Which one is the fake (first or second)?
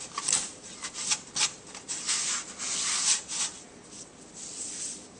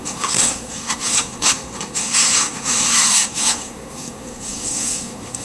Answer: second